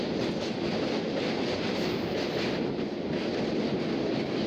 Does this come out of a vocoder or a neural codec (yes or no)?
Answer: no